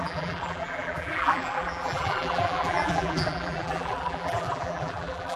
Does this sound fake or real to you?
fake